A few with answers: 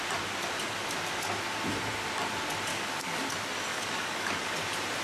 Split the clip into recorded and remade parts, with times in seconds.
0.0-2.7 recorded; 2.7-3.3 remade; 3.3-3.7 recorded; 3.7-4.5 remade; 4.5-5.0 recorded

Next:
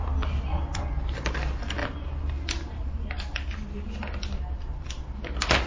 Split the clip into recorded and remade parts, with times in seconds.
0.0-5.7 recorded

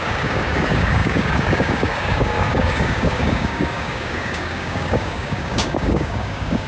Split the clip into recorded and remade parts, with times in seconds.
0.0-6.7 remade

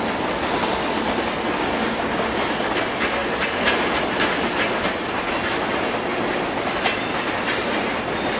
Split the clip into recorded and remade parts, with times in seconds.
0.0-1.8 recorded; 1.8-2.5 remade; 2.5-8.4 recorded

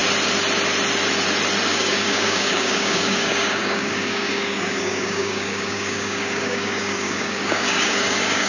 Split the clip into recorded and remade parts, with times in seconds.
0.0-1.7 recorded; 1.7-8.5 remade

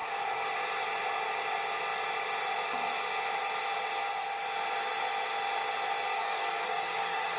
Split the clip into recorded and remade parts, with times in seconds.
0.0-0.5 remade; 0.5-6.1 recorded; 6.1-7.4 remade